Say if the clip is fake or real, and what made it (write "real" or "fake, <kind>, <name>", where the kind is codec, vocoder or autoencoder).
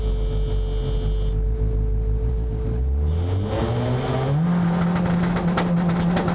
real